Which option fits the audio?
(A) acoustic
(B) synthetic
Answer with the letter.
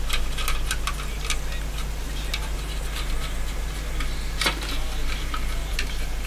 A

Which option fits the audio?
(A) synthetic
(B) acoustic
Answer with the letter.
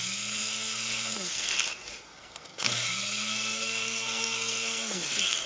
A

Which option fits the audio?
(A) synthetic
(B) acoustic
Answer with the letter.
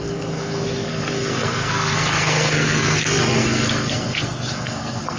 A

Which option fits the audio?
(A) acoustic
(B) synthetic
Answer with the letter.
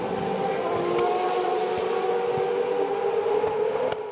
A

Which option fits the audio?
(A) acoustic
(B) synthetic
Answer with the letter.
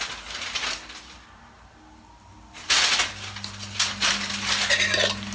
A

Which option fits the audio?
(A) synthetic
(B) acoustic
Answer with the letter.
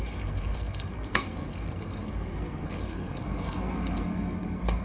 A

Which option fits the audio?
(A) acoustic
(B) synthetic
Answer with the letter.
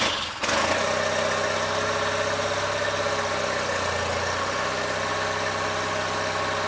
A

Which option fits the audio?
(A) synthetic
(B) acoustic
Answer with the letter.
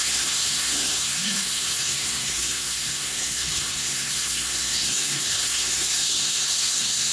A